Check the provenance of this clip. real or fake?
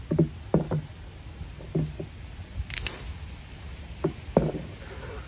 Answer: real